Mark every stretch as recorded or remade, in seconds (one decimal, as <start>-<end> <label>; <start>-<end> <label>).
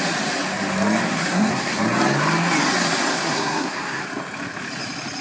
0.0-1.1 recorded; 1.1-1.8 remade; 1.8-3.1 recorded; 3.1-4.0 remade; 4.0-5.2 recorded